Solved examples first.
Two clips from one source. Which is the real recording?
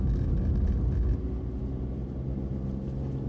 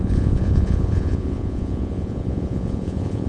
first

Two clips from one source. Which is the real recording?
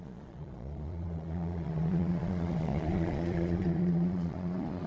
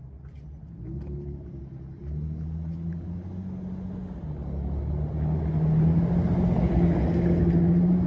second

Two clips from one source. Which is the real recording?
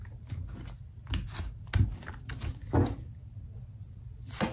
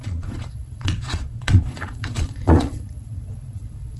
first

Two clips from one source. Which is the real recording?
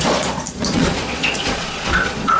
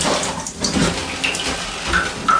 second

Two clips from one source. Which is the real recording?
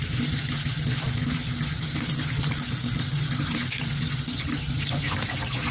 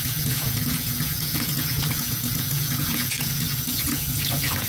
first